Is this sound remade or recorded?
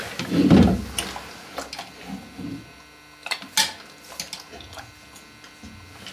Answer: recorded